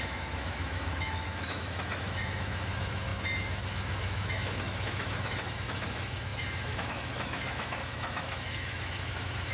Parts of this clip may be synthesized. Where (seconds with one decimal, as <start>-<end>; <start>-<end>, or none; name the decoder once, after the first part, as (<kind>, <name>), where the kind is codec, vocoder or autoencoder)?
0.0-9.5 (autoencoder, DAC-VAE)